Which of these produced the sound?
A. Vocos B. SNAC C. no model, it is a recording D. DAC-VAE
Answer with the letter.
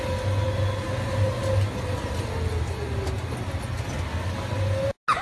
C